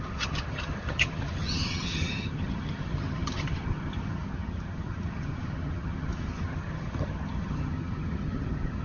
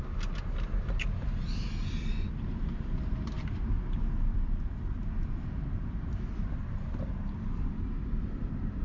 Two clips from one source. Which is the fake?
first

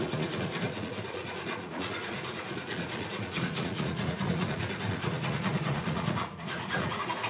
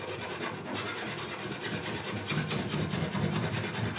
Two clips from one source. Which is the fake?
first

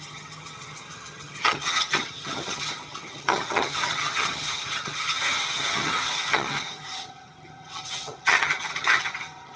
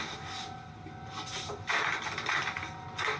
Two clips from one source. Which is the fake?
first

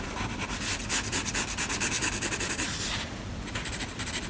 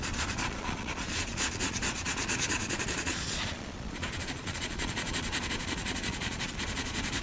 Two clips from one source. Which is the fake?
second